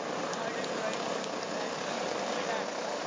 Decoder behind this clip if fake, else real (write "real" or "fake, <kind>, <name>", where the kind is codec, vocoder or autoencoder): real